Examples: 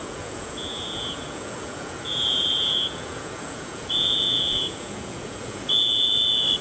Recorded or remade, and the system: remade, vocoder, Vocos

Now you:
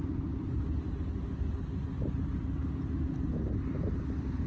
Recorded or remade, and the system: recorded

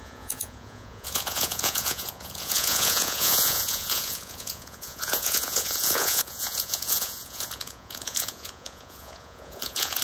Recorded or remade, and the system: remade, vocoder, Vocos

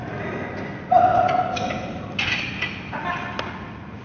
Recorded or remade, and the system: recorded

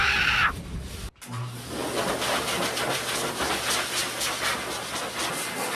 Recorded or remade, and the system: recorded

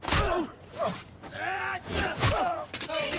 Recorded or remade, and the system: remade, vocoder, Vocos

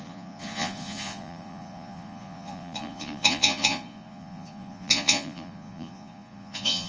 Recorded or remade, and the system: remade, vocoder, Vocos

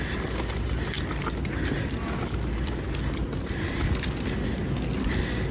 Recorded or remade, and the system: recorded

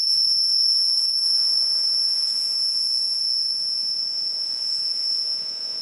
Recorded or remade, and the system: remade, vocoder, Vocos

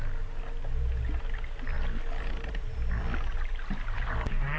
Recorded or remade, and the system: recorded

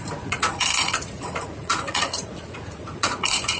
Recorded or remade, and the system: remade, vocoder, Vocos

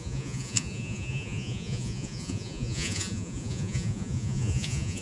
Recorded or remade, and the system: remade, vocoder, Vocos